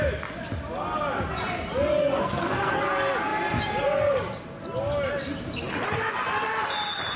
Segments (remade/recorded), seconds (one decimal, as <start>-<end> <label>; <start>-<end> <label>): 0.0-2.0 recorded; 2.0-2.8 remade; 2.8-7.2 recorded